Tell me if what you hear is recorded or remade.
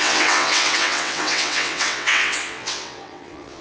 remade